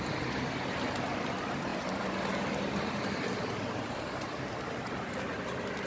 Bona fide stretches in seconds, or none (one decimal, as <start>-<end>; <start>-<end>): 0.0-5.9